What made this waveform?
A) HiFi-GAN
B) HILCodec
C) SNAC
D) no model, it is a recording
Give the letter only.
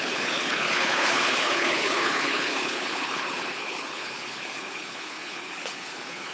B